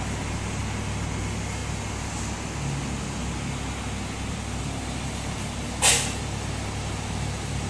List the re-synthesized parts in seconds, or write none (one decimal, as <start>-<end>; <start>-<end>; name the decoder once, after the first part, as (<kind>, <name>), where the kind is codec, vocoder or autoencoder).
0.0-0.6 (vocoder, BigVGAN v2); 1.2-1.6; 4.6-7.7